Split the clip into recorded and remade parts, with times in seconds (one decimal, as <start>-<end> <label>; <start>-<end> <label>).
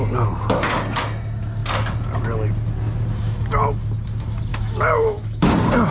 0.0-4.5 recorded; 4.5-5.5 remade; 5.5-5.9 recorded